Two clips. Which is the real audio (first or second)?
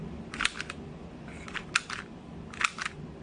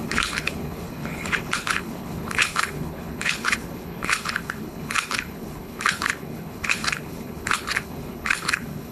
first